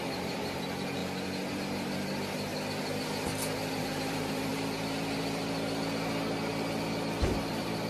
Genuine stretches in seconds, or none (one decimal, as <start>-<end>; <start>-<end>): 1.0-1.5; 2.5-3.8; 4.5-7.4